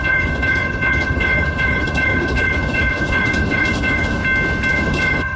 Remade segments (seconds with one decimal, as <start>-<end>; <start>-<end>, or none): 0.0-4.2; 4.7-5.4